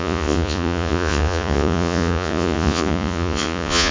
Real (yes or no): no